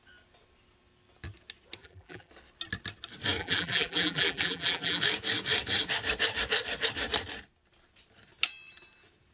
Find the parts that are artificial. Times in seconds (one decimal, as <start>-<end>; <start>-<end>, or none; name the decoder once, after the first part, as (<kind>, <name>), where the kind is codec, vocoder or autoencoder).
1.8-2.3 (vocoder, BigVGAN v2); 3.4-5.0